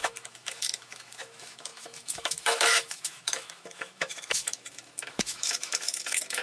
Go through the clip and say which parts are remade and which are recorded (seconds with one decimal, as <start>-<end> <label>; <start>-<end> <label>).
0.0-6.4 remade